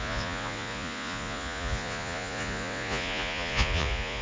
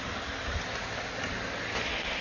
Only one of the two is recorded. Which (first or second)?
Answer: second